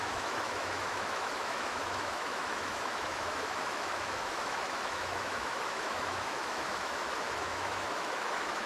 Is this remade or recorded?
remade